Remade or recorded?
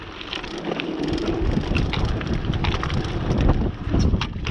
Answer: recorded